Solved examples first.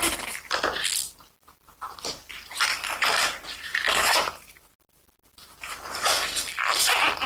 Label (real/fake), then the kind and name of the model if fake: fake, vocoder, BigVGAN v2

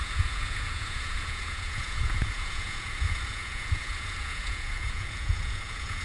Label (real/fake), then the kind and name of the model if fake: fake, vocoder, Vocos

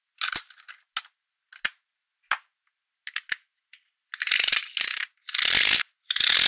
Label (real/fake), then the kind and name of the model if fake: real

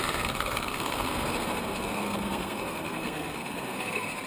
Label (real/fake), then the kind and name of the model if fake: fake, codec, SNAC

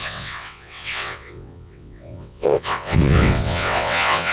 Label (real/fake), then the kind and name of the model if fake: fake, vocoder, WaveNeXt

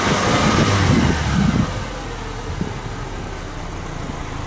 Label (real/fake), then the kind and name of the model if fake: real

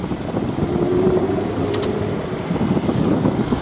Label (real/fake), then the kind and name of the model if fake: fake, vocoder, BigVGAN v2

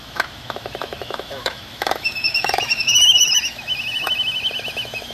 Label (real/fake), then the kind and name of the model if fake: fake, autoencoder, DAC-VAE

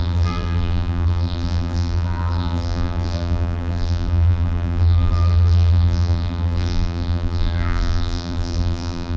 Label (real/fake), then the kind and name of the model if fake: fake, vocoder, BigVGAN v2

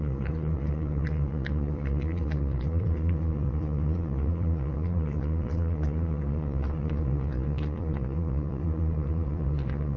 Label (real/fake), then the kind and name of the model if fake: fake, vocoder, Vocos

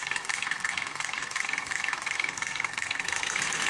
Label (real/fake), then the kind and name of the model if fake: fake, codec, SNAC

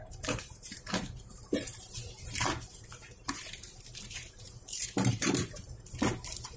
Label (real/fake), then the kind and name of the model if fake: fake, vocoder, BigVGAN v2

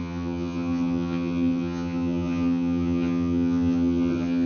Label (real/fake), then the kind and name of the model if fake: fake, vocoder, HiFi-GAN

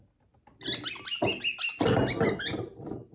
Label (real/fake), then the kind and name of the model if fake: real